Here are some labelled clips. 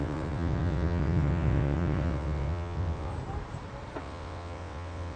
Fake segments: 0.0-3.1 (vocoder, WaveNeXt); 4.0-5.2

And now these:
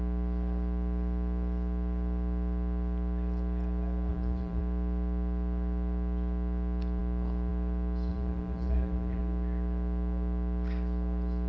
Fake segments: 4.1-4.6 (vocoder, BigVGAN v2); 8.1-9.2

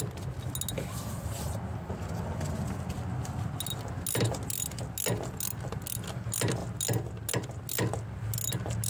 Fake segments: none

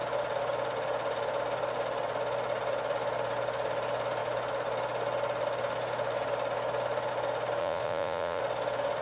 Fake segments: 7.6-8.4 (vocoder, Vocos)

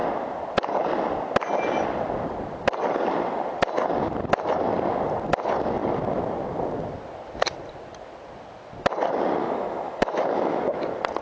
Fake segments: 9.4-10.6 (autoencoder, DAC-VAE)

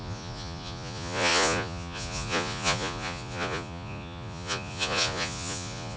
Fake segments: 0.0-6.0 (vocoder, Vocos)

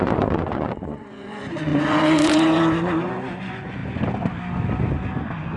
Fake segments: 0.0-3.8 (vocoder, Vocos)

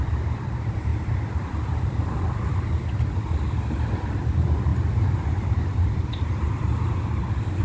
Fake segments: 0.0-3.3 (vocoder, BigVGAN v2); 4.2-7.6